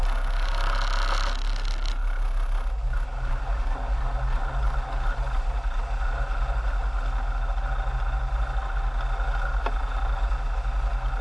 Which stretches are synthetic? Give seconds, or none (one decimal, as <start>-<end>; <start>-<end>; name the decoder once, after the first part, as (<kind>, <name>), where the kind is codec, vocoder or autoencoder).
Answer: none